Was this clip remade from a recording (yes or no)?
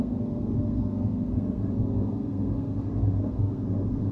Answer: yes